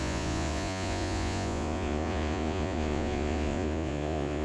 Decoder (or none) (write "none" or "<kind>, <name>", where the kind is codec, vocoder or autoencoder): vocoder, Vocos